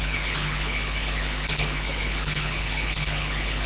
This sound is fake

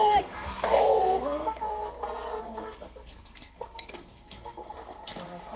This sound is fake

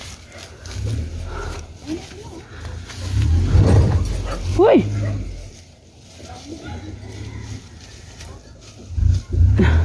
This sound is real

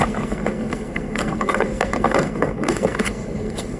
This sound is fake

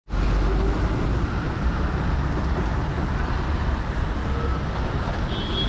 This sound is real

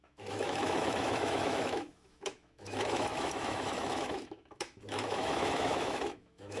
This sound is fake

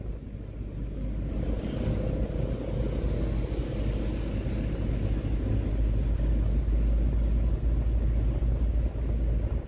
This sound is real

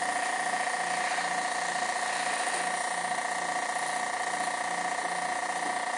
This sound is real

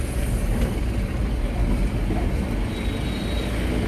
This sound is real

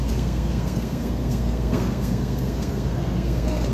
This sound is fake